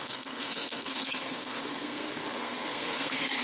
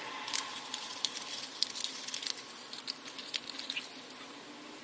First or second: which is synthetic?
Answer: first